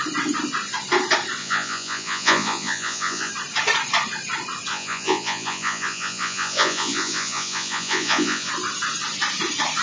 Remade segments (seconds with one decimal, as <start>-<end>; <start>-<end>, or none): 1.4-3.3; 4.7-8.5